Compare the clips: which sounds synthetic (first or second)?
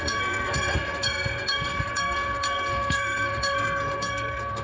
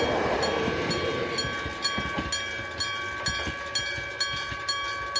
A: first